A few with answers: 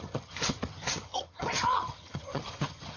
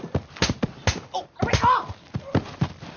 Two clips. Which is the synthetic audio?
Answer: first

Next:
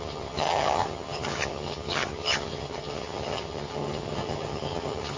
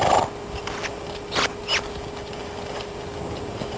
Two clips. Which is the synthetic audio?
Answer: first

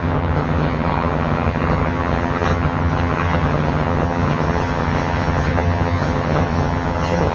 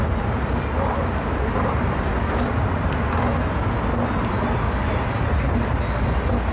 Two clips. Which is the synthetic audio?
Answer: first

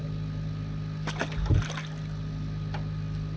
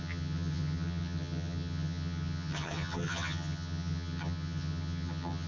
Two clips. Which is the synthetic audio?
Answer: second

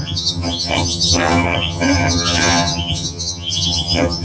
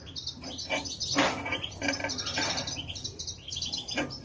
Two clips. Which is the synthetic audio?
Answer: first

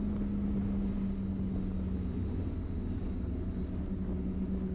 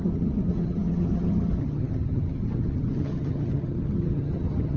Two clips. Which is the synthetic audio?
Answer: second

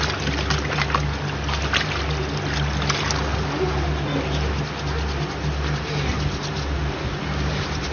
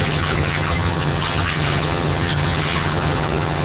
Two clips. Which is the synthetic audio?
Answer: second